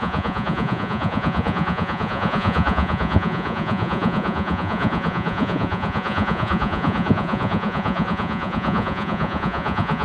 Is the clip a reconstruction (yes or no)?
yes